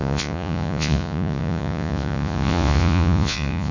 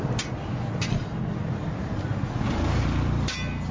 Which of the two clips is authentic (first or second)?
second